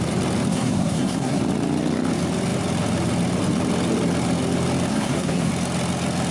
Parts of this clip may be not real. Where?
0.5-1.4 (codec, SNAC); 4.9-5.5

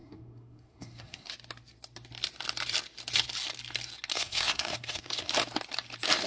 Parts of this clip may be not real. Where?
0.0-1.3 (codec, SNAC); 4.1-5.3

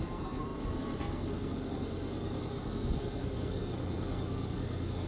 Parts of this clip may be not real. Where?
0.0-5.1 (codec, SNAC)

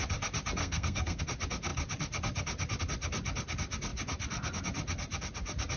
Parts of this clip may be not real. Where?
0.6-1.2 (codec, SNAC)

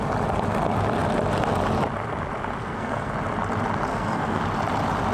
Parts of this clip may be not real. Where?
2.6-3.1 (codec, SNAC); 3.9-4.4

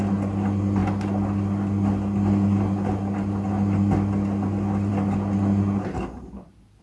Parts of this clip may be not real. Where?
none